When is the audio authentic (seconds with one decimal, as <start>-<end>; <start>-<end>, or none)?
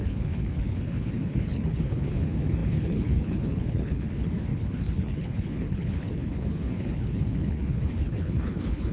none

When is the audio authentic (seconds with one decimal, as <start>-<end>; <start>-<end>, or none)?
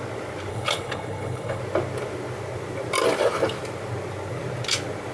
0.0-0.5; 1.6-5.1